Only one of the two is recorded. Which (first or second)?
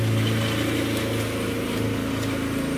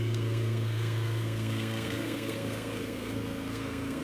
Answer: first